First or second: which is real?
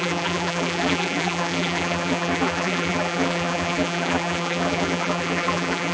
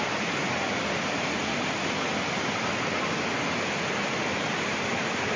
second